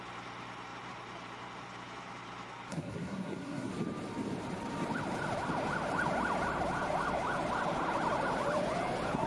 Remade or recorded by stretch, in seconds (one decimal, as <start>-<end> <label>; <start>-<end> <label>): 0.0-2.7 recorded; 2.7-3.7 remade; 3.7-9.3 recorded